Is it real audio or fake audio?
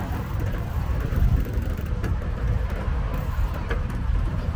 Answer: fake